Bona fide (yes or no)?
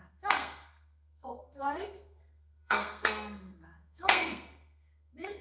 no